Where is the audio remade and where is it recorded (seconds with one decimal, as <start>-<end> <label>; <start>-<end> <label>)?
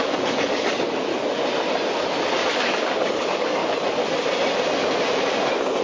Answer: 0.0-1.1 remade; 1.1-2.5 recorded; 2.5-3.6 remade; 3.6-5.8 recorded